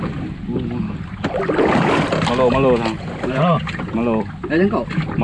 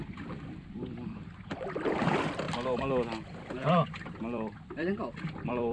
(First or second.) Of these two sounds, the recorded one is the first